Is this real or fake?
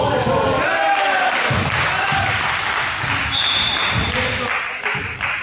real